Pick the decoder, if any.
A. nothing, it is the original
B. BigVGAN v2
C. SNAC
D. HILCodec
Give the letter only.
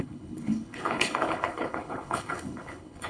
D